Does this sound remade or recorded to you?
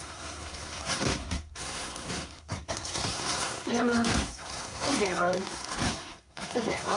remade